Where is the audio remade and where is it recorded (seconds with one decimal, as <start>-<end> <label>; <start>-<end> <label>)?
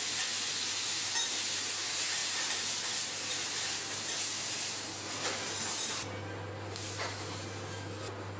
0.0-8.4 recorded